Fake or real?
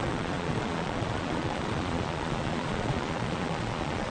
fake